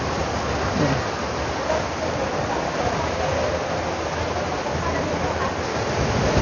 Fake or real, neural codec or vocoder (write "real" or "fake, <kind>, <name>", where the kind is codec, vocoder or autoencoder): real